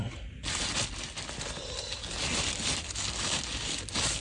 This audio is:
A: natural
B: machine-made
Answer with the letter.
A